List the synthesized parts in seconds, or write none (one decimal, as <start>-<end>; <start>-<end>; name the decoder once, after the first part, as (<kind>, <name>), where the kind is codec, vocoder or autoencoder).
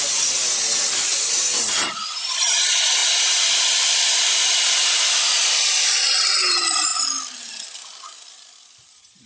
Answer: 0.0-3.0 (vocoder, BigVGAN v2); 3.6-6.9; 7.5-9.3